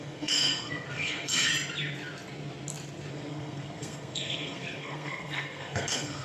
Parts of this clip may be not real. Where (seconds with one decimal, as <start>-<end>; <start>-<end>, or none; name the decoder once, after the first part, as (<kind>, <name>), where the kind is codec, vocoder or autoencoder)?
0.0-1.5 (codec, SNAC); 3.1-6.2

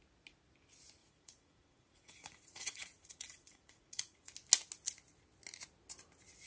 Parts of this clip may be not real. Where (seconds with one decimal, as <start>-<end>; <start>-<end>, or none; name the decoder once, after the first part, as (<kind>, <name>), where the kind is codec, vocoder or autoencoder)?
1.0-4.3 (vocoder, Vocos)

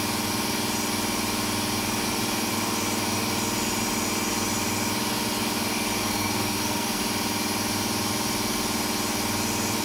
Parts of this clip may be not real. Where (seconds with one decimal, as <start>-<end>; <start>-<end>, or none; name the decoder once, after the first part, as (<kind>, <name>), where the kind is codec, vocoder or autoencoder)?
6.0-7.0 (codec, SNAC)

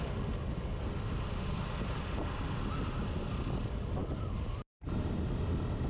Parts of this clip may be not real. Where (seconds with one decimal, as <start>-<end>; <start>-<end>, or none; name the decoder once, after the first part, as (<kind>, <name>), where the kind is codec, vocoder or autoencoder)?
none

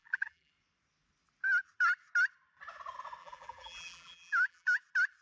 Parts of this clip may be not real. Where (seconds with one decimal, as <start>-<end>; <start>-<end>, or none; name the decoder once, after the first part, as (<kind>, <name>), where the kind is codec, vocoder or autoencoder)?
0.0-0.5 (vocoder, BigVGAN v2); 3.2-4.8

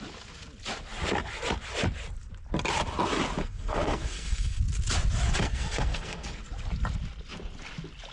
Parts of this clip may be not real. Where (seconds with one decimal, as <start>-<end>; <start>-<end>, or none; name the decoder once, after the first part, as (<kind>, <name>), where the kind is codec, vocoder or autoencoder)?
3.4-4.6 (codec, SNAC); 5.4-6.4

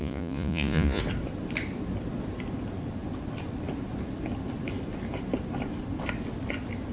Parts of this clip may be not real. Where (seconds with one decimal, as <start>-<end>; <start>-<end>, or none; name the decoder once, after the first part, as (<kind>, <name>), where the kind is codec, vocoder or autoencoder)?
0.0-1.0 (vocoder, Vocos)